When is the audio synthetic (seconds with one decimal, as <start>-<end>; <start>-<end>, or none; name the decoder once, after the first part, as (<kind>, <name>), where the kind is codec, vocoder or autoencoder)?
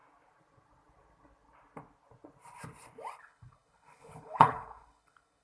3.2-5.4 (codec, HILCodec)